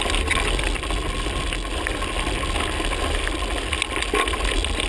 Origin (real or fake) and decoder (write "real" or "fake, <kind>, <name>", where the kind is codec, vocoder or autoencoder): real